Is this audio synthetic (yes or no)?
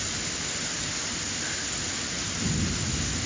no